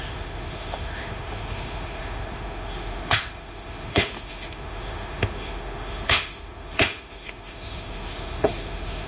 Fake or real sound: fake